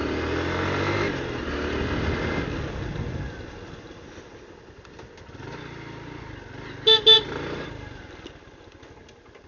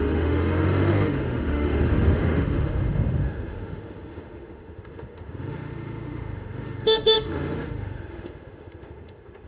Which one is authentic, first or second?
first